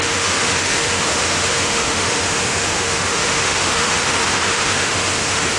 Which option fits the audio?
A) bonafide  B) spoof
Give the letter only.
B